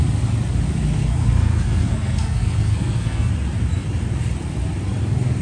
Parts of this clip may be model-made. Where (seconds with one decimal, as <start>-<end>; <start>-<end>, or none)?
1.0-3.3